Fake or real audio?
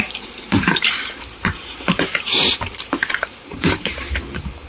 fake